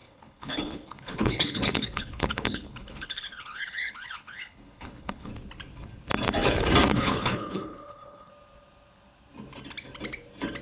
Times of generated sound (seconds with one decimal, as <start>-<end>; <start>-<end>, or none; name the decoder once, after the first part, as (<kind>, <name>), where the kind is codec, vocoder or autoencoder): 0.0-5.3 (codec, HILCodec); 6.9-8.3